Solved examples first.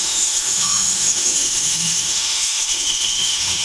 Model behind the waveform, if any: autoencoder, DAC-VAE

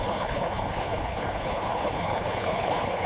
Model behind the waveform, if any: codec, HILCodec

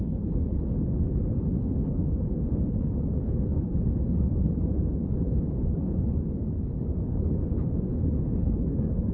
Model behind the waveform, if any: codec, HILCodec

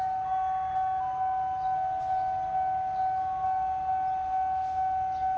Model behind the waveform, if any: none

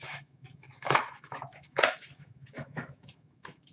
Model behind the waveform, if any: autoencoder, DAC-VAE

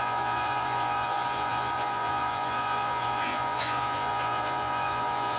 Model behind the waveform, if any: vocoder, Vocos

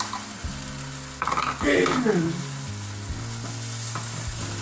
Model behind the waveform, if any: none